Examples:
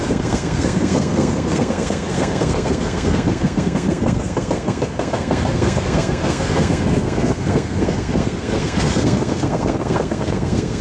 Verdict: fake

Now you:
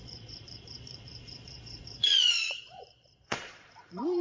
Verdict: fake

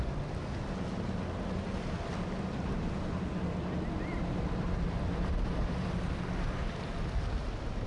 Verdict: real